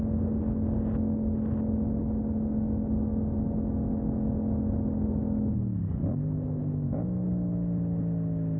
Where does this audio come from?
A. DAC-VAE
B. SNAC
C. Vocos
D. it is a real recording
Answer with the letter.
D